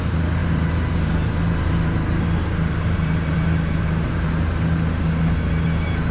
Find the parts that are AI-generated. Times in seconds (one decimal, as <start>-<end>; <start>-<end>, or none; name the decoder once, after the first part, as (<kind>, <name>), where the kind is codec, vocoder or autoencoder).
0.4-4.1 (vocoder, BigVGAN v2)